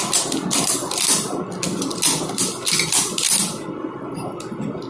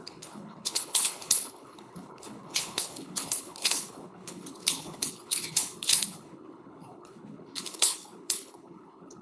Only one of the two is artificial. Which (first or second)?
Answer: second